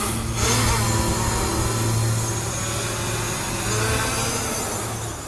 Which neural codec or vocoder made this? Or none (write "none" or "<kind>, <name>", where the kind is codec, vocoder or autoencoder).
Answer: none